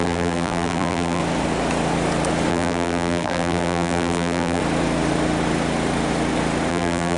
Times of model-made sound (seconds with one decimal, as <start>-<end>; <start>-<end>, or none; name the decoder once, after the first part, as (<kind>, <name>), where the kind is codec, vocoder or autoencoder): 0.0-1.2 (vocoder, BigVGAN v2); 2.5-4.6; 6.7-7.2